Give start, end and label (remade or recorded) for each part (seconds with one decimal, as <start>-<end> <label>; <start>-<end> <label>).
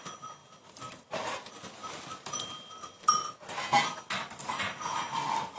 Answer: 0.0-5.6 recorded